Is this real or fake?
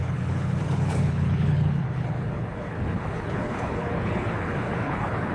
fake